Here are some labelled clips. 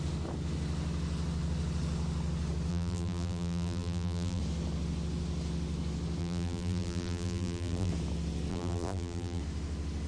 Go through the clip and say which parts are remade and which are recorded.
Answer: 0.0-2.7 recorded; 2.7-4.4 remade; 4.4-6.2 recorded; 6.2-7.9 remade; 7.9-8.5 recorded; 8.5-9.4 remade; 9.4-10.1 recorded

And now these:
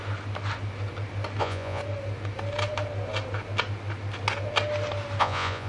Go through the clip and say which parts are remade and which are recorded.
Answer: 0.0-1.4 recorded; 1.4-1.8 remade; 1.8-5.2 recorded; 5.2-5.7 remade

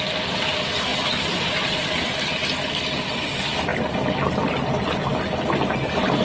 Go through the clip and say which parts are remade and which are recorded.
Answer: 0.0-0.9 recorded; 0.9-2.1 remade; 2.1-3.7 recorded; 3.7-4.3 remade; 4.3-6.2 recorded

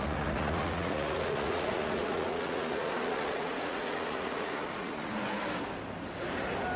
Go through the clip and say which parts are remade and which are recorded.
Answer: 0.0-5.1 remade; 5.1-6.8 recorded